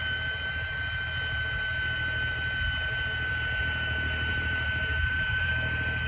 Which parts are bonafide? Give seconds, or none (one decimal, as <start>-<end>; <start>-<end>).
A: 0.0-4.3; 5.5-6.1

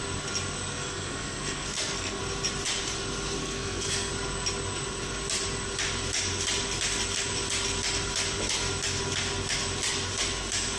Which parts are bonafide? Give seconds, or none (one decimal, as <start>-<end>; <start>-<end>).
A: 0.0-0.7; 2.2-3.4; 4.1-10.8

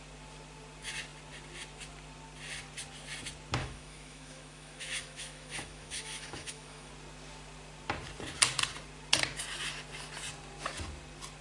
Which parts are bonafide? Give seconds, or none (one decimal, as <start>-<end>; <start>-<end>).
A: 0.0-3.6; 6.9-11.4

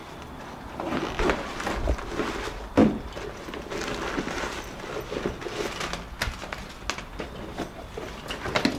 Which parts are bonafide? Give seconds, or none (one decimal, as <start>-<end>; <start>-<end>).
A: 1.0-2.8; 3.6-7.1; 8.2-8.8

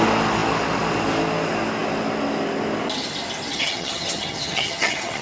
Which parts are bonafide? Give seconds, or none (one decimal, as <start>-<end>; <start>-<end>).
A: 0.0-3.5